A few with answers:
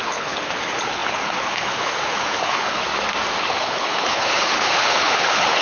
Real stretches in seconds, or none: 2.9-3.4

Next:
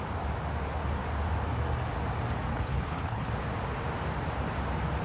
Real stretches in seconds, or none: 0.0-2.5; 3.3-5.0